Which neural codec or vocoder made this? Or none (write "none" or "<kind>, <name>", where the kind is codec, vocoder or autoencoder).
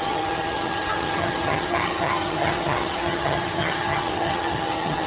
vocoder, HiFi-GAN